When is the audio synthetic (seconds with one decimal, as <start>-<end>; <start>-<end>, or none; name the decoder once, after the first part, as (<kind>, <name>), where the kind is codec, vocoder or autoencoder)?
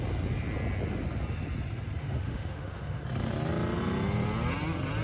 2.0-3.0 (autoencoder, DAC-VAE)